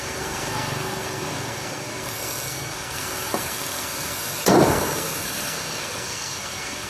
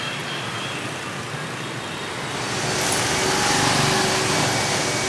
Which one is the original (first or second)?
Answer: second